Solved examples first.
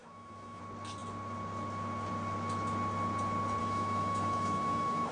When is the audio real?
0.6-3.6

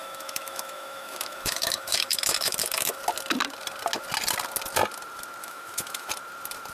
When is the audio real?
3.0-5.4; 6.1-6.7

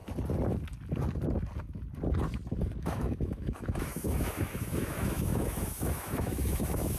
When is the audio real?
0.0-2.8